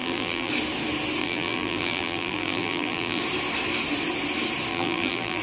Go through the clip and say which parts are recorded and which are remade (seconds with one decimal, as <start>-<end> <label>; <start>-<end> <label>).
0.0-0.5 remade; 0.5-1.2 recorded; 1.2-3.2 remade; 3.2-4.7 recorded; 4.7-5.4 remade